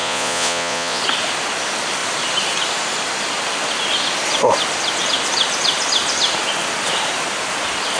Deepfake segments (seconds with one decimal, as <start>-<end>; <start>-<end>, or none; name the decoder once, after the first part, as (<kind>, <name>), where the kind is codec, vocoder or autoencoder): 0.0-1.0 (vocoder, Vocos)